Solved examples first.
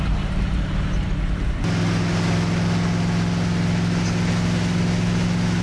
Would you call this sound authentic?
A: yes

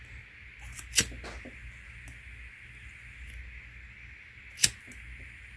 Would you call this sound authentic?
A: yes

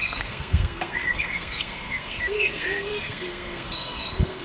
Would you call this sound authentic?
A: no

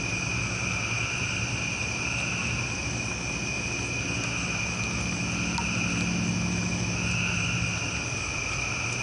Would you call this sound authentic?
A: yes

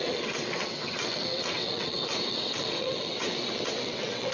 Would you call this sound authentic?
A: no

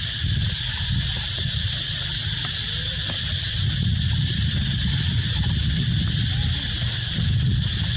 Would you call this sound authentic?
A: yes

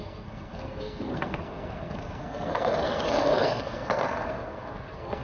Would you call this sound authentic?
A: no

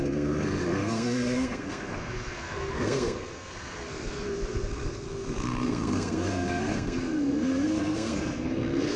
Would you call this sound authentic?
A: no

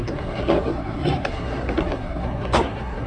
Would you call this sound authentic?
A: no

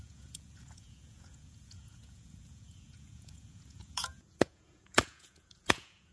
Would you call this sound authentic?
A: no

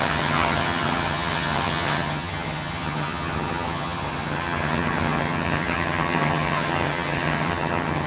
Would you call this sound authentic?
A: no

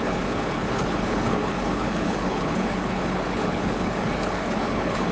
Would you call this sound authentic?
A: no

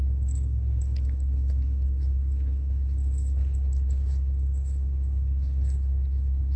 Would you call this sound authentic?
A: no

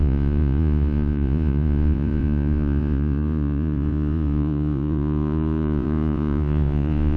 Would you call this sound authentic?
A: no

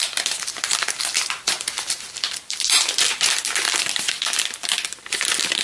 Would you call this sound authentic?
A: no